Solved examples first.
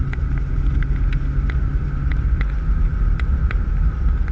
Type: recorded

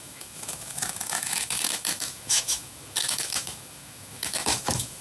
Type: remade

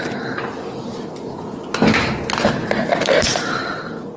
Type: recorded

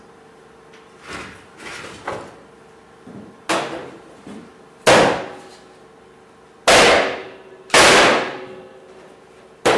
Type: recorded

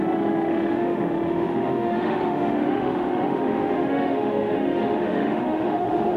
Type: remade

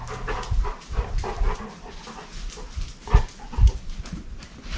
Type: recorded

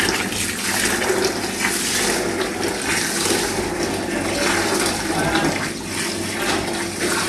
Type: recorded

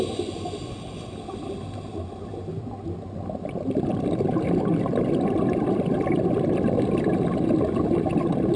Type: recorded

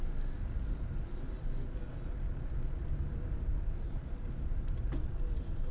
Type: recorded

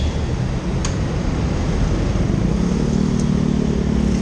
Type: recorded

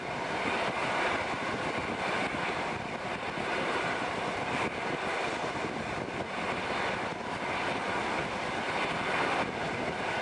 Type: recorded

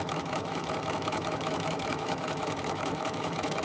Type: remade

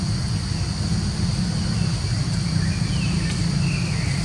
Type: recorded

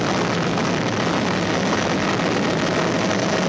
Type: recorded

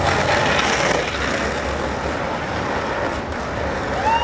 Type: recorded